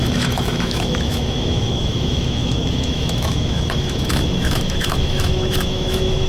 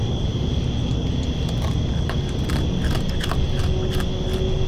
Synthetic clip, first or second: first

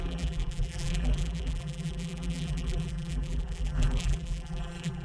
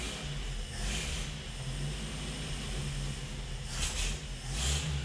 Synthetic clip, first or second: first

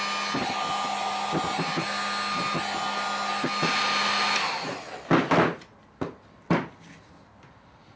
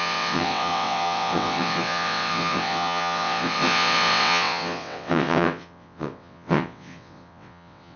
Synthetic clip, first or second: second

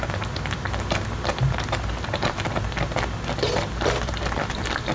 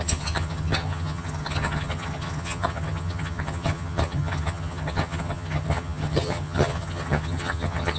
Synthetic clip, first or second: second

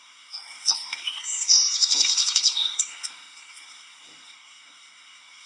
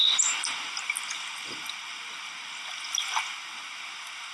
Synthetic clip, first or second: first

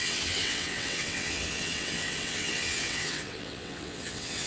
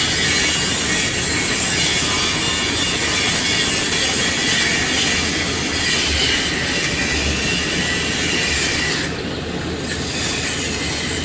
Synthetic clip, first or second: first